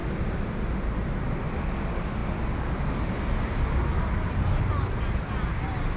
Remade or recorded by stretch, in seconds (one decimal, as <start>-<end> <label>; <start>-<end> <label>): 0.0-6.0 recorded